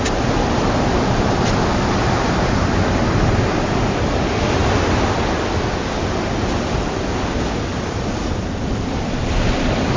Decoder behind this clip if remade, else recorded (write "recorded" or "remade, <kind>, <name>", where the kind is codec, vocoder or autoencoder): recorded